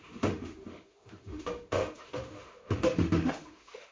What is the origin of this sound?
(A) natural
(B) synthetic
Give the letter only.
B